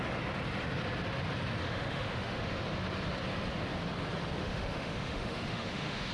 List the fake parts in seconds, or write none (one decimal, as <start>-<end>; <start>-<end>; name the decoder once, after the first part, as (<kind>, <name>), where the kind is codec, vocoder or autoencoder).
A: 1.6-2.6 (autoencoder, DAC-VAE); 4.4-6.1